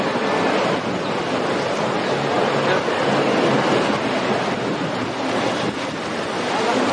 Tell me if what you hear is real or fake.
real